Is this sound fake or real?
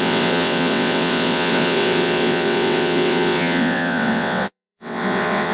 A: fake